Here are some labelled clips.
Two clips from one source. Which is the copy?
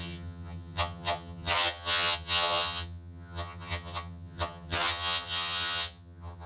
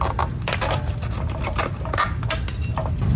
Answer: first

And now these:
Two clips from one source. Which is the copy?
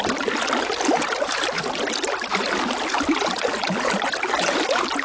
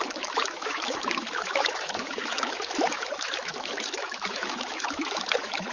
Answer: second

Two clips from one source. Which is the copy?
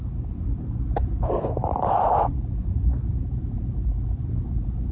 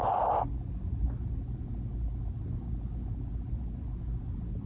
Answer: first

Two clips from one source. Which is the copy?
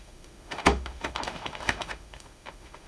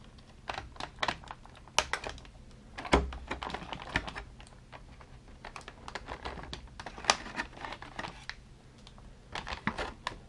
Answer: first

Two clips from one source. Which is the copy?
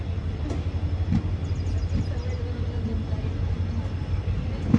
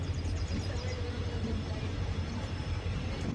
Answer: second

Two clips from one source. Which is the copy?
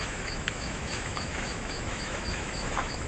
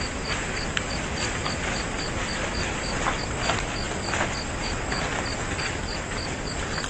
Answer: first